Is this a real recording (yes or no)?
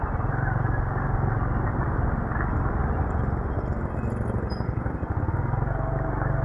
yes